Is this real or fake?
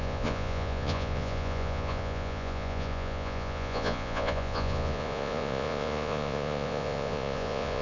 fake